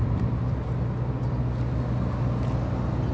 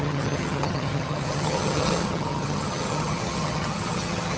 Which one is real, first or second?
first